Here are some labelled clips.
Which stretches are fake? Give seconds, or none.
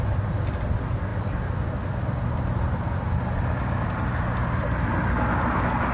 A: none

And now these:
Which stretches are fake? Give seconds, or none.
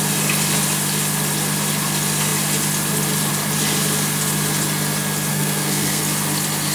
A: 5.3-6.0 (codec, SNAC)